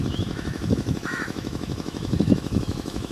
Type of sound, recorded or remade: remade